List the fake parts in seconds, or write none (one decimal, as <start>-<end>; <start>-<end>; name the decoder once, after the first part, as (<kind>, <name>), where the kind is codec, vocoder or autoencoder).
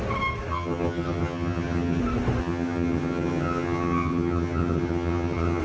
0.5-2.0 (vocoder, HiFi-GAN); 2.4-5.6